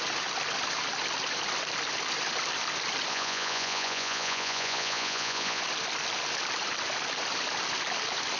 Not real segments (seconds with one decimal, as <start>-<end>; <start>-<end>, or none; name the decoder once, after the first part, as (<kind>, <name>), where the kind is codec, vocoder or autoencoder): 3.1-5.6 (vocoder, Vocos)

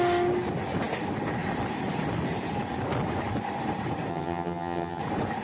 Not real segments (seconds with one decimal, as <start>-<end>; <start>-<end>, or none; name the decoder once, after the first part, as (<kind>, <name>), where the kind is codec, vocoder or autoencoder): 4.1-5.0 (vocoder, HiFi-GAN)

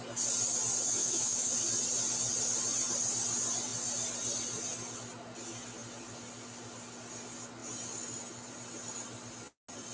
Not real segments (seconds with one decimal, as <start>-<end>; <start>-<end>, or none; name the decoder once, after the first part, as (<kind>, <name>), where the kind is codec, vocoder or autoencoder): 1.0-1.5 (autoencoder, DAC-VAE)